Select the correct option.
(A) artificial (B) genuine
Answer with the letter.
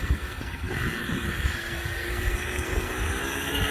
A